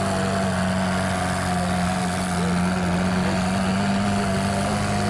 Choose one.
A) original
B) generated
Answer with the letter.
A